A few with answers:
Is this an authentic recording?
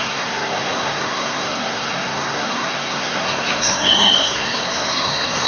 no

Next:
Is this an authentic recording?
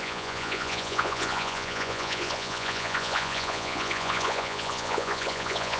no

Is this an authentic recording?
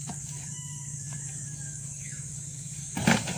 no